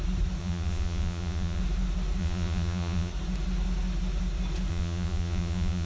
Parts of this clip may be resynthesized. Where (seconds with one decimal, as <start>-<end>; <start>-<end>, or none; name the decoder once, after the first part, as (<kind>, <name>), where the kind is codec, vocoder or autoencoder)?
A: 0.4-1.6 (vocoder, Vocos); 2.2-3.1; 4.7-5.9